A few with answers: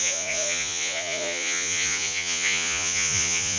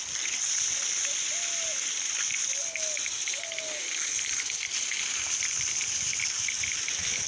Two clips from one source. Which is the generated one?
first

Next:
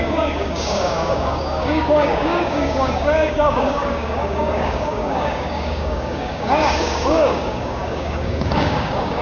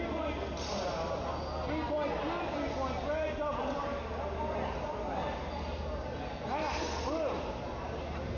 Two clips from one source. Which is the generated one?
first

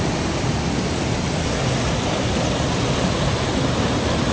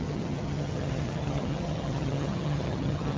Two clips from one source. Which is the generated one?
second